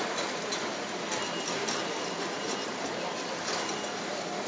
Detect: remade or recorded recorded